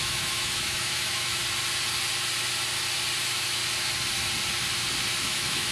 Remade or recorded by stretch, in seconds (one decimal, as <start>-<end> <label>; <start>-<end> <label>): 0.0-1.4 remade; 1.4-3.2 recorded; 3.2-3.6 remade; 3.6-5.2 recorded; 5.2-5.7 remade

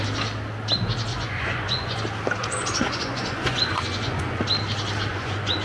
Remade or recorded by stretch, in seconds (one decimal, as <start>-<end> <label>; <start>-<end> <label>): 0.0-1.1 recorded; 1.1-2.0 remade; 2.0-2.4 recorded; 2.4-4.4 remade; 4.4-5.1 recorded; 5.1-5.6 remade

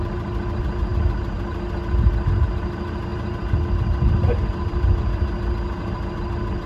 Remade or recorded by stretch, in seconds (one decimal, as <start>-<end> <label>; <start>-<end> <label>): 0.0-6.7 recorded

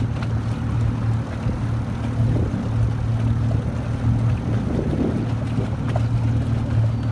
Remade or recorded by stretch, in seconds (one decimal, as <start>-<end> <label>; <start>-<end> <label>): 0.0-7.1 recorded